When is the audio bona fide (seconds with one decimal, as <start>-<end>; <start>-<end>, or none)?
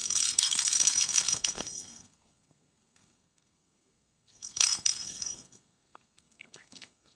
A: none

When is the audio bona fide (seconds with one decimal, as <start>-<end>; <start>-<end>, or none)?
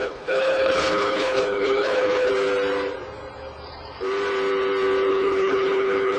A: 2.3-5.1